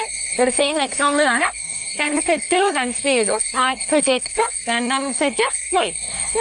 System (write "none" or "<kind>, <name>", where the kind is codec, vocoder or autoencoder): codec, SNAC